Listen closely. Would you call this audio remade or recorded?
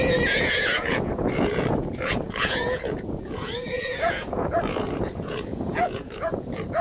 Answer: remade